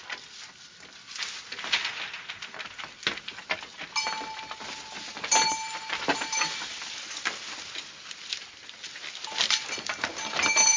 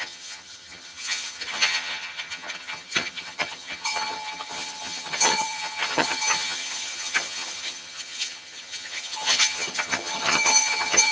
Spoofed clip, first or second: second